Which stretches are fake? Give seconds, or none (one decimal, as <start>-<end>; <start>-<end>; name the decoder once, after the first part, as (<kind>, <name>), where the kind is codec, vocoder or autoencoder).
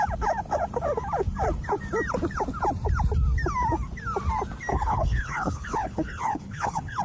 4.7-7.0 (codec, HILCodec)